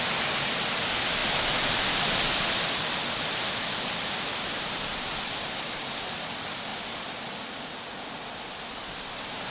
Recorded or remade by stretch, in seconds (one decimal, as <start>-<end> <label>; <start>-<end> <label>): 0.0-9.5 recorded